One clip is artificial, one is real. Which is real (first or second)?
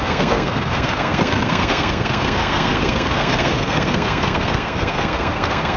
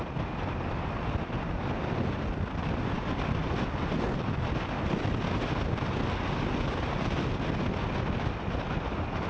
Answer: second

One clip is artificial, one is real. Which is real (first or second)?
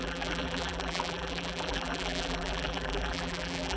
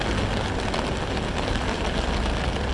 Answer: second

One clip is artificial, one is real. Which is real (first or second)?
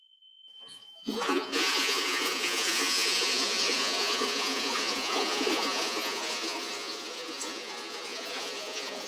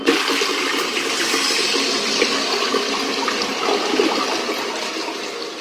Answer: second